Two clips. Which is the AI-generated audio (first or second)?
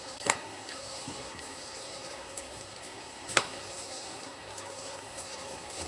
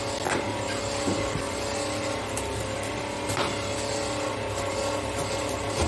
first